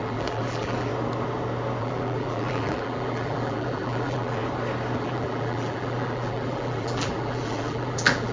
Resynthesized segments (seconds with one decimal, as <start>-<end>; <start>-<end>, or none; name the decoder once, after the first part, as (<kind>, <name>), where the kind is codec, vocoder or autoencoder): 0.0-0.9 (vocoder, BigVGAN v2); 1.8-4.4; 5.0-8.3